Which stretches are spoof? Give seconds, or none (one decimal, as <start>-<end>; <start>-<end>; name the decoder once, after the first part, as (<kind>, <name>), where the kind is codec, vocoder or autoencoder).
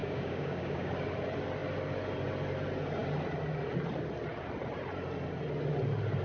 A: 0.0-0.9 (codec, DAC)